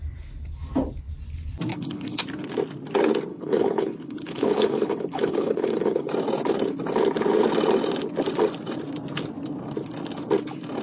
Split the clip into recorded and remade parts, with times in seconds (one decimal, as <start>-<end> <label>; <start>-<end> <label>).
0.0-1.7 recorded; 1.7-2.2 remade; 2.2-3.3 recorded; 3.3-6.1 remade; 6.1-10.8 recorded